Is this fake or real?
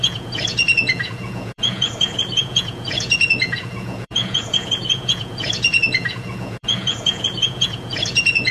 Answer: fake